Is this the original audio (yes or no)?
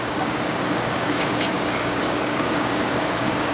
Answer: no